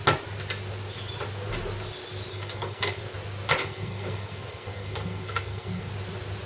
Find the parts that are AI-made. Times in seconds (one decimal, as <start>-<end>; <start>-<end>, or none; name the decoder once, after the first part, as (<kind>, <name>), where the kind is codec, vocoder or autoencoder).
2.3-3.0 (codec, SNAC); 3.6-5.9